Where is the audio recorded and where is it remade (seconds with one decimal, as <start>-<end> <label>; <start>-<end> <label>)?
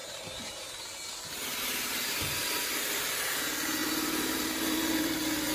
0.0-3.3 remade; 3.3-3.8 recorded; 3.8-5.5 remade